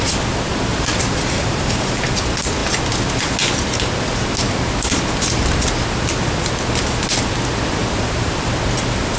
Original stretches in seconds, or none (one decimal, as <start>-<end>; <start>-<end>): 0.0-0.7; 2.0-7.8; 8.5-9.2